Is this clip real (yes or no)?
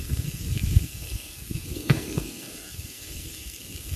no